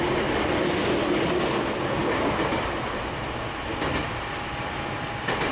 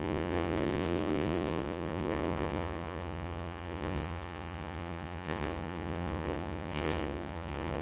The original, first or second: first